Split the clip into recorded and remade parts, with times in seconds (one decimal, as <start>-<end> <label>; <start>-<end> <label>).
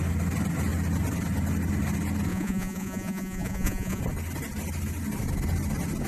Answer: 0.0-2.3 recorded; 2.3-4.0 remade; 4.0-6.1 recorded